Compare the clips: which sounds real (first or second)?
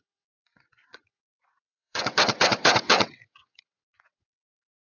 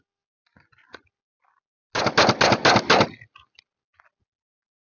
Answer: second